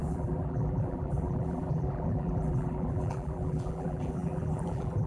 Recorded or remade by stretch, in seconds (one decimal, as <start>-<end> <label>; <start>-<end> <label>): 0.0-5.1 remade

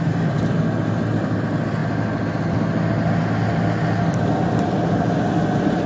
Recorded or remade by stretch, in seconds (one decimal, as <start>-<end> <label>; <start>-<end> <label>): 0.0-5.9 recorded

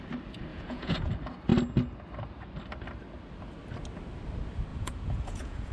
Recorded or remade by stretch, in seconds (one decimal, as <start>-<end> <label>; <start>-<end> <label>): 0.0-0.5 recorded; 0.5-1.1 remade; 1.1-4.7 recorded; 4.7-5.7 remade